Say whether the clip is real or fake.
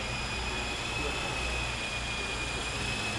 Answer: real